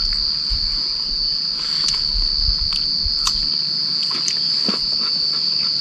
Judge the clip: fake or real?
real